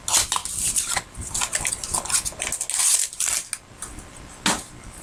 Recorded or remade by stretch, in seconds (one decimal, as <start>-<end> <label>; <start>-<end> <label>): 0.0-5.0 recorded